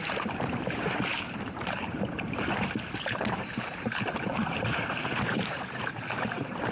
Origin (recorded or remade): remade